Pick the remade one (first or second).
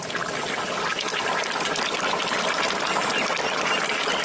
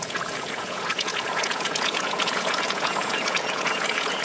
second